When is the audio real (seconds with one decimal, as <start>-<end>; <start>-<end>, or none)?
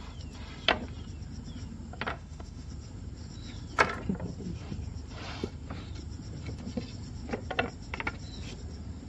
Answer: 0.0-2.1; 2.7-9.1